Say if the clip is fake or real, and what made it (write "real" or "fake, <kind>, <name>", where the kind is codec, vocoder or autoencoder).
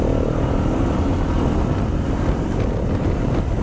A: real